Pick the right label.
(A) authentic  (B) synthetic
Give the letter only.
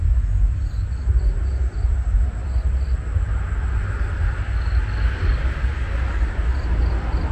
A